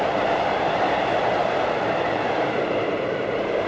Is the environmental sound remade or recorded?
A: remade